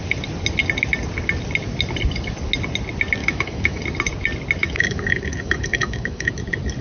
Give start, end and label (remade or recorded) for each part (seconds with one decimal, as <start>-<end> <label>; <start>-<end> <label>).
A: 0.0-3.2 recorded; 3.2-3.8 remade; 3.8-4.6 recorded; 4.6-6.3 remade; 6.3-6.8 recorded